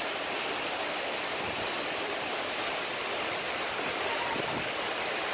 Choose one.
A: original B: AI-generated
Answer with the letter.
B